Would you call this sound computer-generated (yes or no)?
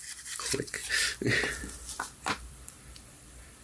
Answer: yes